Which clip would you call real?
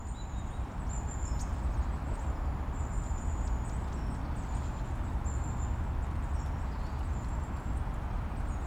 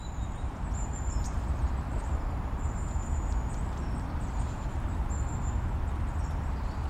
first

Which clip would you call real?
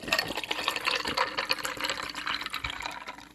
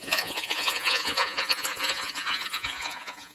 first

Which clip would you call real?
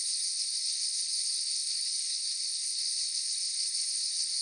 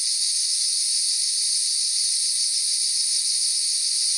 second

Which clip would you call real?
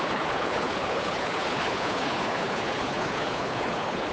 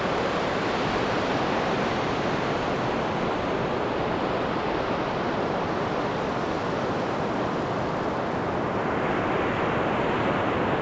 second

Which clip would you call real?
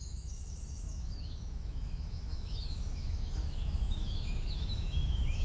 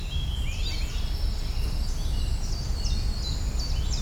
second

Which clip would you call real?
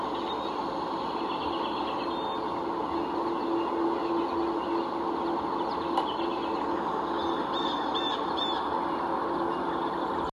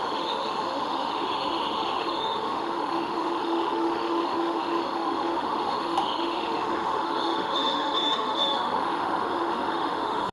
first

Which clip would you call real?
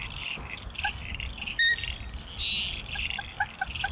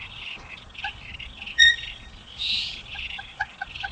first